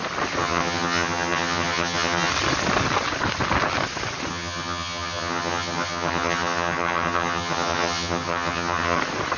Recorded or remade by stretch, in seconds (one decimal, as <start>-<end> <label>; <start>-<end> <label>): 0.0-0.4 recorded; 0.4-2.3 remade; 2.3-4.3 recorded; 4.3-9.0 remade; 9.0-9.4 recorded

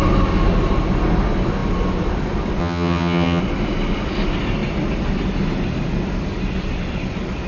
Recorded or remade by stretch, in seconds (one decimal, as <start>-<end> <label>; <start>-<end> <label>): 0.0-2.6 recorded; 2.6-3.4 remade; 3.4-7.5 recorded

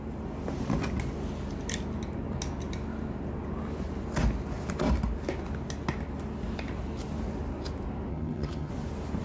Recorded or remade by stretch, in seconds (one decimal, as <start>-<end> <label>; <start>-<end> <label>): 0.0-8.1 recorded; 8.1-8.7 remade; 8.7-9.2 recorded

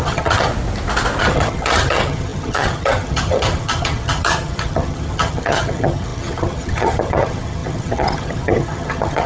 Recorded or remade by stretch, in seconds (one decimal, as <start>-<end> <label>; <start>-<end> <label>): 0.0-0.5 remade; 0.5-1.2 recorded; 1.2-9.3 remade